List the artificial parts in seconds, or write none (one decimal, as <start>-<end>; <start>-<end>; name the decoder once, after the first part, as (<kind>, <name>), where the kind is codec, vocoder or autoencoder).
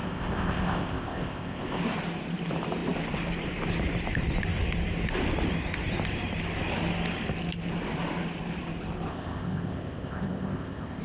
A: 0.0-1.8 (codec, ZipCodec); 9.1-11.0